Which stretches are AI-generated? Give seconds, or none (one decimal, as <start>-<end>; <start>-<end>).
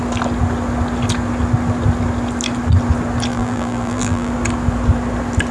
3.3-4.3